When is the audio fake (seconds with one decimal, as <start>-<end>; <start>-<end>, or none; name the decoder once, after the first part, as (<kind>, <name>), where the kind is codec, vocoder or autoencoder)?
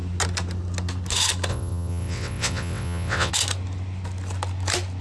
1.5-3.3 (vocoder, WaveNeXt)